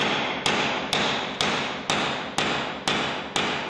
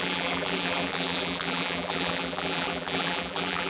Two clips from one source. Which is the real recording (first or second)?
first